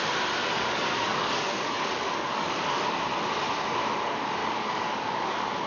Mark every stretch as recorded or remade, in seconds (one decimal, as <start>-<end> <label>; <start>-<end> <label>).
0.0-0.4 recorded; 0.4-2.9 remade; 2.9-4.4 recorded; 4.4-5.7 remade

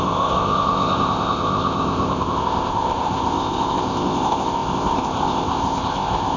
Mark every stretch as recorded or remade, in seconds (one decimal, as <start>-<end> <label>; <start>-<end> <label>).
0.0-6.4 remade

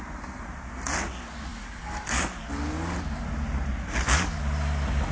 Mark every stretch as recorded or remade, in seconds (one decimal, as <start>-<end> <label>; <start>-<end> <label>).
0.0-1.5 recorded; 1.5-2.4 remade; 2.4-5.1 recorded

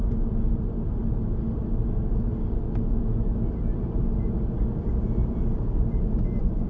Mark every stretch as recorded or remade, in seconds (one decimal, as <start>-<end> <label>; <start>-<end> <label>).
0.0-6.7 recorded

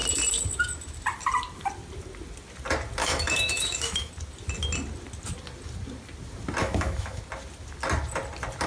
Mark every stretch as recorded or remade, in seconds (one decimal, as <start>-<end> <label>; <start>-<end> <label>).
0.0-3.0 recorded; 3.0-4.1 remade; 4.1-6.6 recorded; 6.6-7.2 remade; 7.2-8.7 recorded

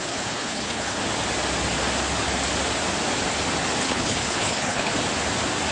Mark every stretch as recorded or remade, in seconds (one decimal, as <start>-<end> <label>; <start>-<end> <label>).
0.0-1.0 remade; 1.0-3.8 recorded; 3.8-4.9 remade; 4.9-5.7 recorded

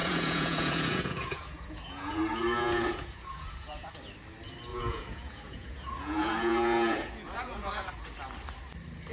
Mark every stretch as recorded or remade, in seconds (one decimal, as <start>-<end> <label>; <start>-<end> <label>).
0.0-3.9 remade; 3.9-4.7 recorded; 4.7-7.9 remade; 7.9-9.1 recorded